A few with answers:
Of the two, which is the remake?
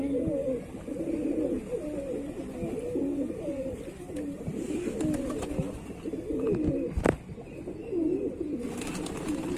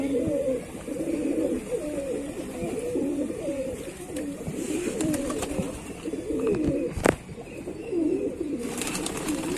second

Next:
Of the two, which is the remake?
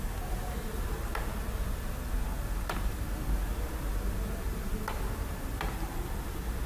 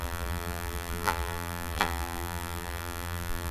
second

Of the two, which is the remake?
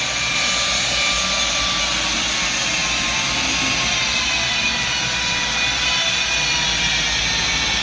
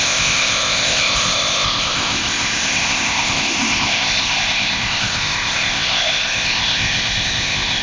second